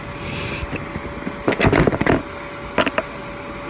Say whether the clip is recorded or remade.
recorded